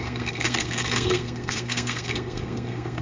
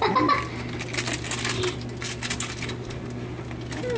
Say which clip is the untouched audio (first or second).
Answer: second